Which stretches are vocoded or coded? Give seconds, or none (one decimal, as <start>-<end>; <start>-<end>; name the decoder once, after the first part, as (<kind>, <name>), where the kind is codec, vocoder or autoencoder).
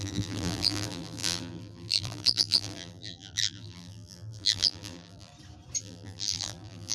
0.0-5.3 (vocoder, BigVGAN v2); 5.8-6.9